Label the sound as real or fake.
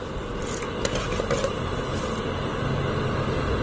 real